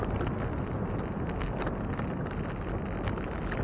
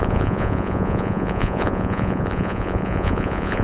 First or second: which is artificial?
second